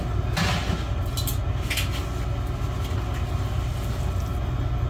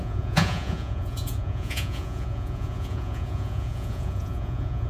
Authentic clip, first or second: first